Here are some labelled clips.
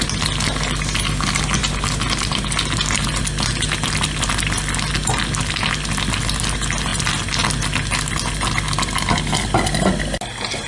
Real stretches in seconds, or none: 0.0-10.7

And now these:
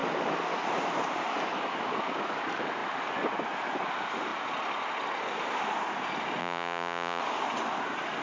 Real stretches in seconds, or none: 0.0-6.4; 7.2-8.2